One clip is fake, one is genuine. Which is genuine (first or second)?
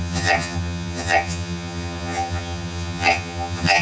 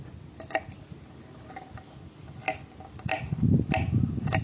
second